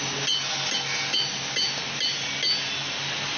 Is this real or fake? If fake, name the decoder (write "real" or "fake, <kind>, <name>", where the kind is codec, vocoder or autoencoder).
real